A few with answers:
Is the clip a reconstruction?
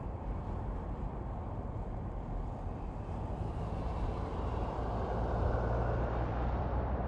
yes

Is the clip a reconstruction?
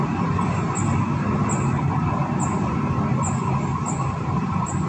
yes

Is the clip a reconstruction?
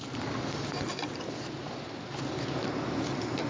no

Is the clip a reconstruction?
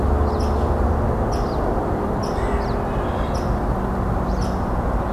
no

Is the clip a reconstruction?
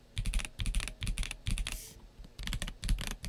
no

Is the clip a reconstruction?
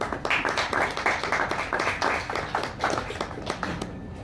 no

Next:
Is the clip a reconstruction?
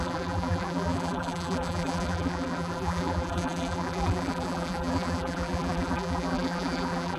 yes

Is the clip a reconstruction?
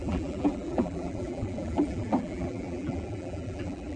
yes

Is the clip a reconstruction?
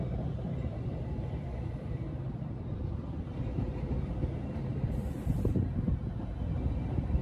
yes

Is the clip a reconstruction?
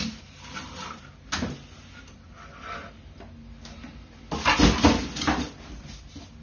no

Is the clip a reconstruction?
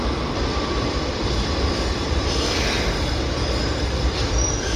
yes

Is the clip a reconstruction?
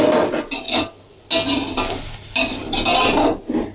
no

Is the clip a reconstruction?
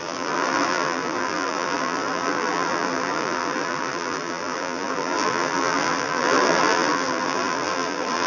yes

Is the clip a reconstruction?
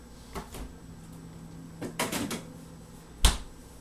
no